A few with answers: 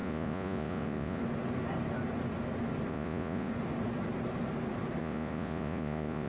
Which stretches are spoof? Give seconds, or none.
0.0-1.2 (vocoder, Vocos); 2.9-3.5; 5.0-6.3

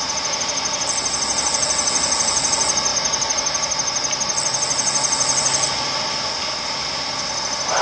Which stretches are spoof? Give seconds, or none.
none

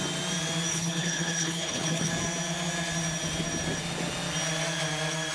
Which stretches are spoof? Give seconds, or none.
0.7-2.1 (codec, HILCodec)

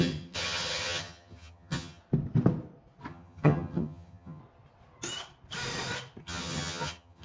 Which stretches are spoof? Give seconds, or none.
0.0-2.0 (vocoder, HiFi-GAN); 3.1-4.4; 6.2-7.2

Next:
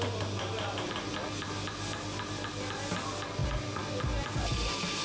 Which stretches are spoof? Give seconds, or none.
none